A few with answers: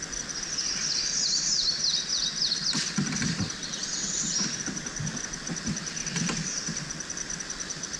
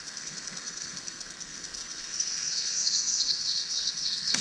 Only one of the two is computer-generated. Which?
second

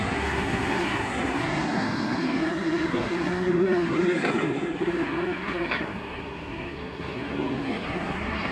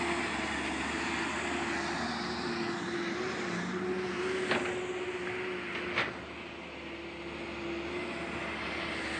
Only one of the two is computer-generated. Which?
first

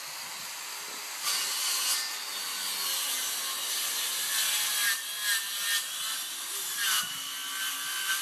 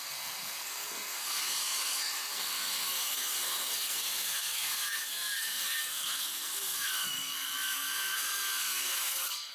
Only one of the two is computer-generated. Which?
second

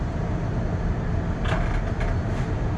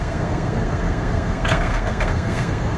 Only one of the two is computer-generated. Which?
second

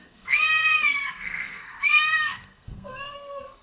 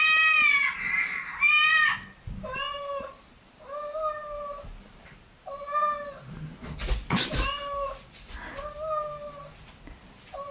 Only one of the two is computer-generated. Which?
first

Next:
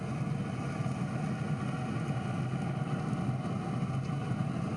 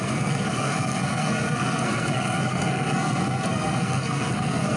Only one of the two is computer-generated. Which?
second